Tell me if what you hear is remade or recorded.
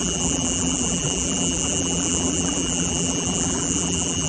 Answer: remade